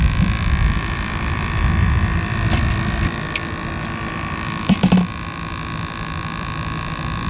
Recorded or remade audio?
remade